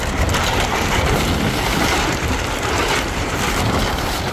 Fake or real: real